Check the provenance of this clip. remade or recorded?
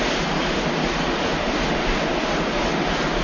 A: recorded